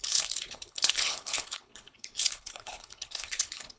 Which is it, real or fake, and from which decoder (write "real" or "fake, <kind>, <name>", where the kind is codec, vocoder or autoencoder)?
fake, codec, HILCodec